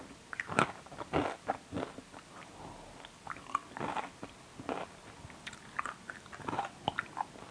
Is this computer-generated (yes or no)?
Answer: no